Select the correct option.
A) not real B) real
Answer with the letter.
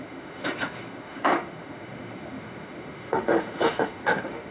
A